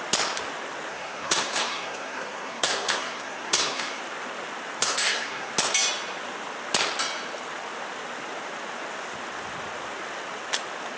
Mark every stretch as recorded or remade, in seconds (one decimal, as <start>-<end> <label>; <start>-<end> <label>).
0.0-0.9 recorded; 0.9-4.0 remade; 4.0-4.8 recorded; 4.8-5.5 remade; 5.5-11.0 recorded